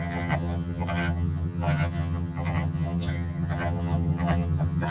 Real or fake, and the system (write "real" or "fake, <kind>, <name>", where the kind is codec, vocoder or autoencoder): fake, vocoder, HiFi-GAN